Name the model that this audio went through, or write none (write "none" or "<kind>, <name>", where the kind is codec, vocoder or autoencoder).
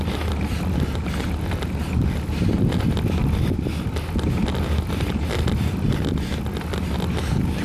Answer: none